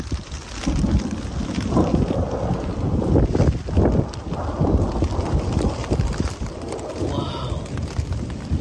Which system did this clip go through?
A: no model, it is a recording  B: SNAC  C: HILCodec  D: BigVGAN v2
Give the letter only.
A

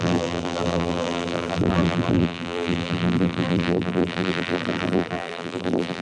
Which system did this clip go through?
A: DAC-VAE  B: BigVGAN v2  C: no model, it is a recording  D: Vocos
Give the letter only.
B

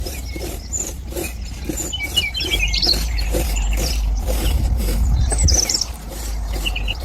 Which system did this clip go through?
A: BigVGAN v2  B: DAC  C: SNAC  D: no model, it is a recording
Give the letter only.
A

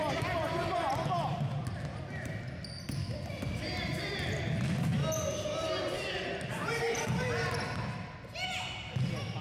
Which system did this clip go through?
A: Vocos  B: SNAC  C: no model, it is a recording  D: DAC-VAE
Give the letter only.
C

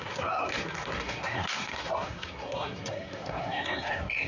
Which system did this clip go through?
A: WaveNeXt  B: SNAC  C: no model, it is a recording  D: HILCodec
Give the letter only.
B